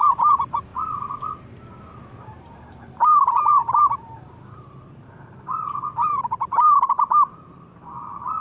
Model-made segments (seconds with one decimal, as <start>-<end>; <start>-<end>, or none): 0.0-0.7; 2.2-8.4